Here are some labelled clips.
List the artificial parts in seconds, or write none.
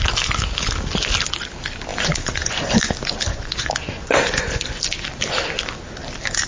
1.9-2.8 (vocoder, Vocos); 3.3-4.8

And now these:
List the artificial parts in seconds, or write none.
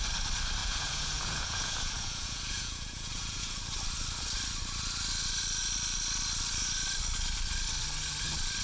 0.6-3.6 (vocoder, Vocos)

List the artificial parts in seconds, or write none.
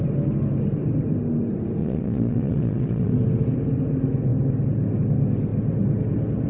1.8-3.1 (vocoder, Vocos)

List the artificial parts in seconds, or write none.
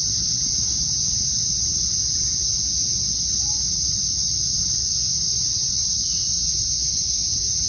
none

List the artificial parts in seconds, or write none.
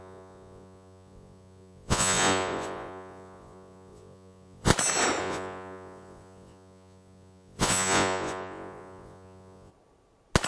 0.0-4.7 (vocoder, Vocos); 5.2-9.7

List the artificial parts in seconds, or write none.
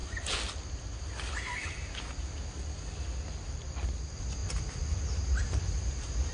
none